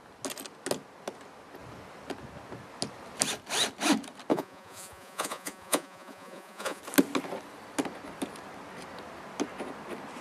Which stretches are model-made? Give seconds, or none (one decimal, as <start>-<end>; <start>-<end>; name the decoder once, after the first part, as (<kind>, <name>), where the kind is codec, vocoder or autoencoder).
4.3-6.8 (vocoder, Vocos)